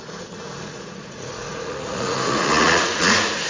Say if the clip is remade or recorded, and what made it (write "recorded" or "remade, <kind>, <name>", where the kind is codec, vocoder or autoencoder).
remade, vocoder, Vocos